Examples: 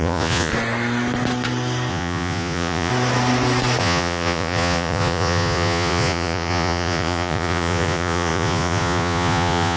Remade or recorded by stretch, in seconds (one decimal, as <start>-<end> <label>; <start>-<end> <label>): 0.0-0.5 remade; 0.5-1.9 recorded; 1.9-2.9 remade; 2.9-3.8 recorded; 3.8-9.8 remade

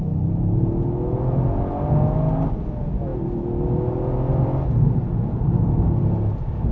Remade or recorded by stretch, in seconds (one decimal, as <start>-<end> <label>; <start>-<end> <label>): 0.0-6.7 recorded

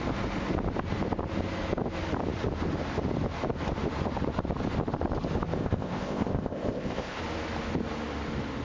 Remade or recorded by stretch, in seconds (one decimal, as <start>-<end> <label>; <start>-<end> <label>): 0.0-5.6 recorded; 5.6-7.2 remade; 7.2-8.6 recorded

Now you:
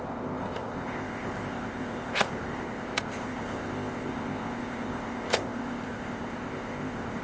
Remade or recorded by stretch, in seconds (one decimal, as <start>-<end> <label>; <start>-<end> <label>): 0.0-7.2 remade